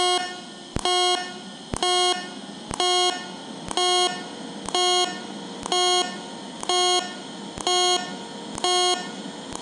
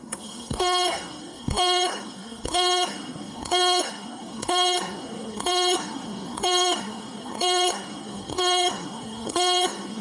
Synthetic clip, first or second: second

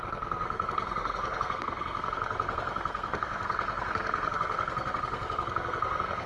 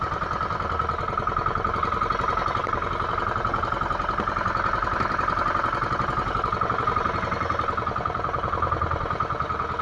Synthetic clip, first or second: first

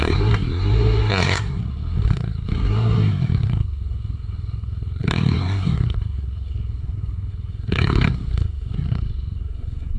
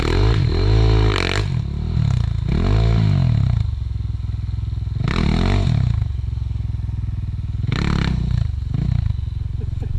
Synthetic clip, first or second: first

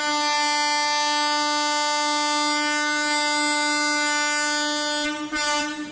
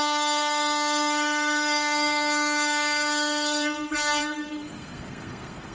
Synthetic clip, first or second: second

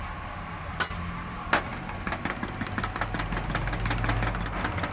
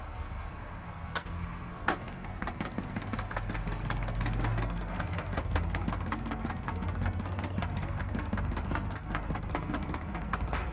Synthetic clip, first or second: second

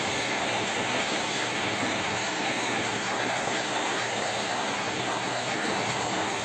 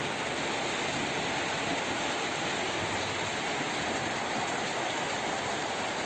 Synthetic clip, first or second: first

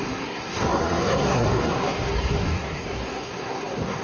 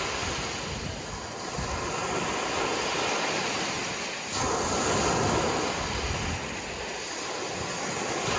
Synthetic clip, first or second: first